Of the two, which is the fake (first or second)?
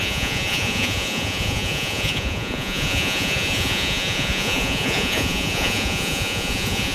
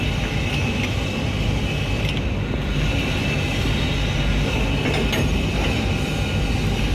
first